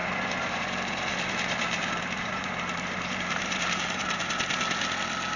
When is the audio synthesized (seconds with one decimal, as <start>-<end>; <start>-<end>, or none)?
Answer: 0.0-0.6; 1.1-4.3